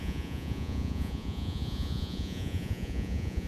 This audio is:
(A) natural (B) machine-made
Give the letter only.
B